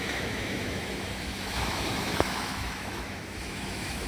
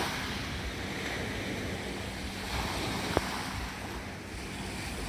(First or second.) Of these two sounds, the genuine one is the second